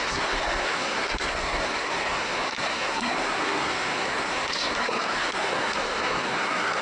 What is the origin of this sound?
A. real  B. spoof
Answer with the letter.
B